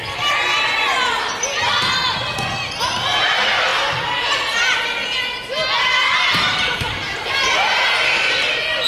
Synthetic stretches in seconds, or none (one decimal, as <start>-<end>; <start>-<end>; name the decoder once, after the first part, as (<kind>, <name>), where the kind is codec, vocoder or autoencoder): none